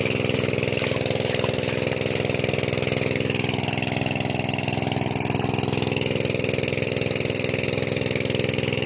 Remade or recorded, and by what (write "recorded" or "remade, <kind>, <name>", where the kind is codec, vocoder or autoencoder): recorded